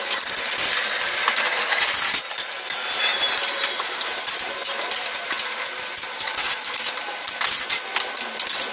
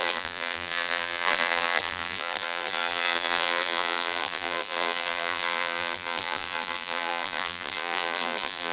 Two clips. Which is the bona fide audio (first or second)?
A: first